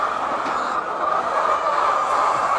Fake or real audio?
real